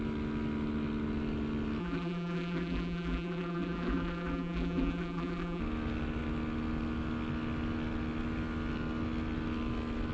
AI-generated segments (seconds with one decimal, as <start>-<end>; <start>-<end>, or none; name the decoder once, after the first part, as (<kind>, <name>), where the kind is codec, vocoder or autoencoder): 1.8-5.6 (vocoder, BigVGAN v2)